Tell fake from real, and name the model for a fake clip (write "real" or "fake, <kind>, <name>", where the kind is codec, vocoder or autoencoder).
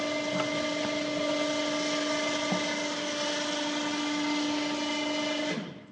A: real